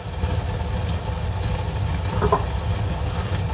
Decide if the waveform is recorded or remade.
recorded